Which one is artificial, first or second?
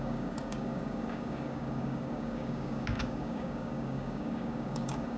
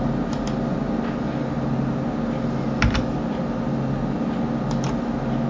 first